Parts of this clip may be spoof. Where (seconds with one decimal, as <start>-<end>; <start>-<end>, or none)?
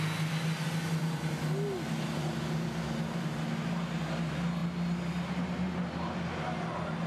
none